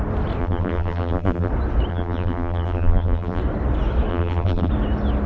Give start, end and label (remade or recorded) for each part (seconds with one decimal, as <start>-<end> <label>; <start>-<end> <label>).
0.0-0.4 recorded; 0.4-1.5 remade; 1.5-1.9 recorded; 1.9-3.4 remade; 3.4-4.1 recorded; 4.1-4.7 remade; 4.7-5.3 recorded